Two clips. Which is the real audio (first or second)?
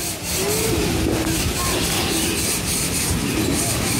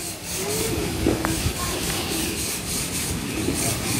first